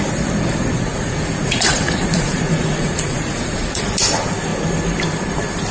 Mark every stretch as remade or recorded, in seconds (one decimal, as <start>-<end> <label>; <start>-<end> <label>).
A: 0.0-0.9 recorded; 0.9-3.8 remade; 3.8-5.7 recorded

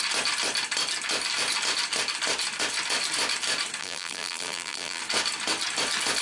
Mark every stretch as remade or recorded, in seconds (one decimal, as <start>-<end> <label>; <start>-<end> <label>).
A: 0.0-3.8 recorded; 3.8-5.0 remade; 5.0-6.2 recorded

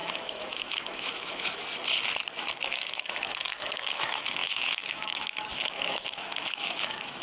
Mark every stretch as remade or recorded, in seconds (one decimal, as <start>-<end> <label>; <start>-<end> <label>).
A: 0.0-1.6 remade; 1.6-2.4 recorded; 2.4-7.2 remade

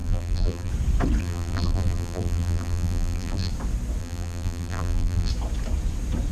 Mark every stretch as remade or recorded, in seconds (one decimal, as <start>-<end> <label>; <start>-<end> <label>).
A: 0.0-0.7 remade; 0.7-1.2 recorded; 1.2-3.5 remade; 3.5-4.0 recorded; 4.0-5.3 remade; 5.3-6.3 recorded

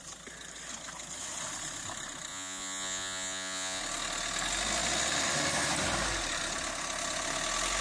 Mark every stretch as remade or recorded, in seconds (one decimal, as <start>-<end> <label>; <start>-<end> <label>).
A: 0.0-2.3 recorded; 2.3-3.8 remade; 3.8-7.8 recorded

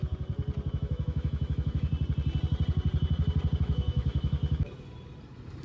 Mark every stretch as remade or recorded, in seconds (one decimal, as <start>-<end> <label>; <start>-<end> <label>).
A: 0.0-0.7 recorded; 0.7-1.9 remade; 1.9-3.6 recorded; 3.6-4.4 remade; 4.4-5.6 recorded

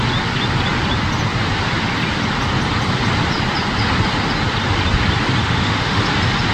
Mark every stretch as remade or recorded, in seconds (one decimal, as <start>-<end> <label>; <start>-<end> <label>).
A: 0.0-5.4 recorded; 5.4-6.0 remade; 6.0-6.5 recorded